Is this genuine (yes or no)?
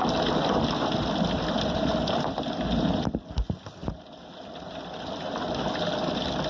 yes